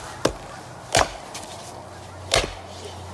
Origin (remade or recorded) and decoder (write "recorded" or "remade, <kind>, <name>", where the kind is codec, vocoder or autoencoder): recorded